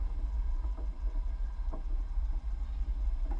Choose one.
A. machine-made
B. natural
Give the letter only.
B